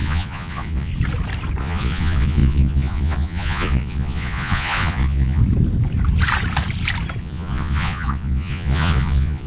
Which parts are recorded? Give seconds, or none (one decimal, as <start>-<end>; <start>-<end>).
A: 0.9-1.6; 5.4-7.2